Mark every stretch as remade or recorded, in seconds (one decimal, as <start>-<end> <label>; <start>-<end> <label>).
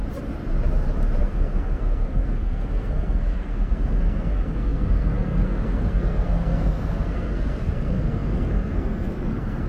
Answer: 0.0-1.2 recorded; 1.2-9.7 remade